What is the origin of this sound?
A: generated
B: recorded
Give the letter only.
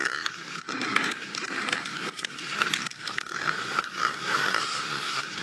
A